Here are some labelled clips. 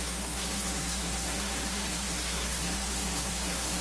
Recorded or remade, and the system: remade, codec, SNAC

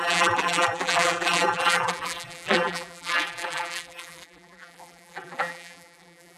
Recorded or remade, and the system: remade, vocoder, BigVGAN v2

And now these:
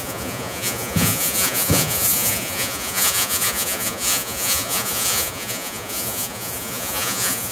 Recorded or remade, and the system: remade, vocoder, Vocos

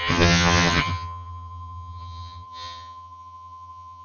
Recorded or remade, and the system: remade, vocoder, HiFi-GAN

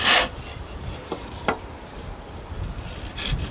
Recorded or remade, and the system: recorded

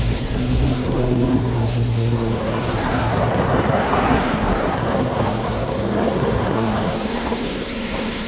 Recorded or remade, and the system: remade, codec, SNAC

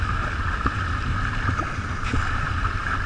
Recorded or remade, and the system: recorded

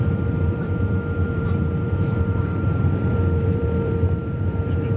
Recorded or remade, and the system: remade, vocoder, BigVGAN v2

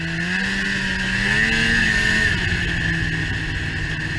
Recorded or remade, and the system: recorded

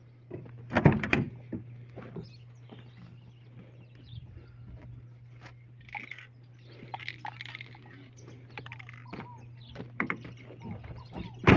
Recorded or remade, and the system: recorded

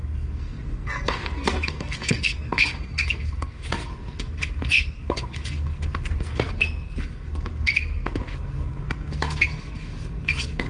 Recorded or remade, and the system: remade, codec, SNAC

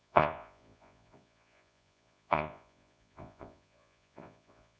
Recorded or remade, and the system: remade, vocoder, Vocos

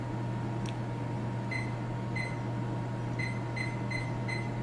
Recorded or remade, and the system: recorded